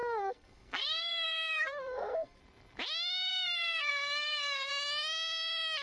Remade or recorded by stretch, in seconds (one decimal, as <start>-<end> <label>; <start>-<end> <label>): 0.0-2.4 remade; 2.4-3.3 recorded; 3.3-4.7 remade; 4.7-5.8 recorded